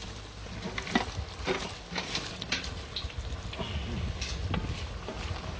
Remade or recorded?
recorded